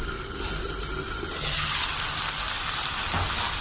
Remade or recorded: recorded